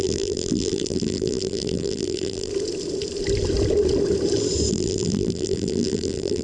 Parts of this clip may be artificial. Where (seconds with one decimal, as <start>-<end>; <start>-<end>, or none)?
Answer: 0.0-2.5; 4.7-6.4